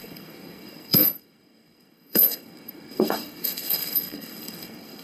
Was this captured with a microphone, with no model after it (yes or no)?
no